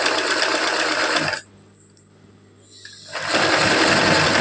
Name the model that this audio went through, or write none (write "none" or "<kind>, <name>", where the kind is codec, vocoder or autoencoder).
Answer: none